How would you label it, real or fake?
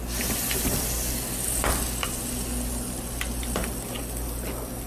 real